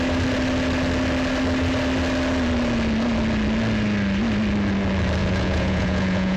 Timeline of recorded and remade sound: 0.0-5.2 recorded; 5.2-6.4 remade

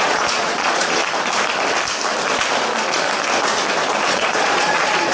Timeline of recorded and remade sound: 0.0-1.0 remade; 1.0-4.1 recorded; 4.1-5.1 remade

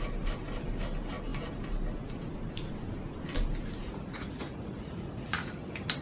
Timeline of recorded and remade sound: 0.0-3.8 recorded; 3.8-5.5 remade; 5.5-6.0 recorded

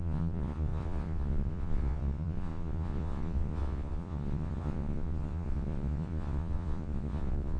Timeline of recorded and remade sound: 0.0-7.6 remade